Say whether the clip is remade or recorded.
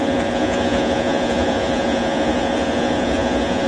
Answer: remade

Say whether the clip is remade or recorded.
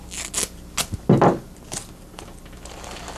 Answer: recorded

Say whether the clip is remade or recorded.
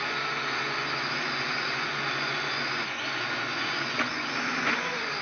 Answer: remade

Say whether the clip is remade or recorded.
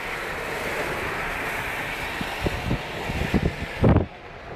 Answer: recorded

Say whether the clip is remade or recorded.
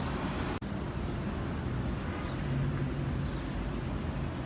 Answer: recorded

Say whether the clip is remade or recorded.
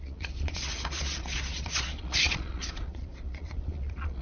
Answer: remade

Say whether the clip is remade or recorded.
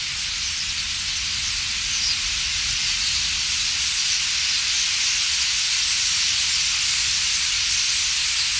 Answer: recorded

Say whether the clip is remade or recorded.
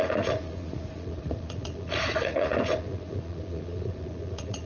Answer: remade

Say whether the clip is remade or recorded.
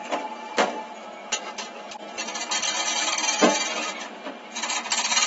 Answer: recorded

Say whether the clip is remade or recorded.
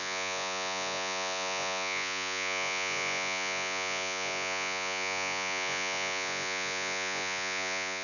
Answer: remade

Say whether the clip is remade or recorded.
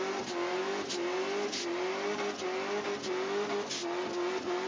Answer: recorded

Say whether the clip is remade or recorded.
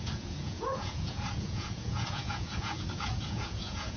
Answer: remade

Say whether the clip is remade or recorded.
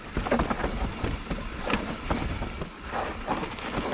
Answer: recorded